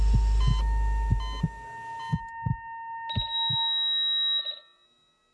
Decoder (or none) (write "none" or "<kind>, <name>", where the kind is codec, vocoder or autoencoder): none